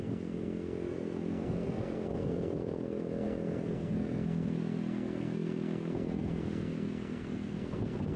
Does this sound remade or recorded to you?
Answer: remade